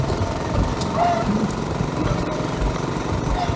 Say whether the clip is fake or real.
fake